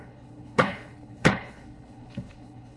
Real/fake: fake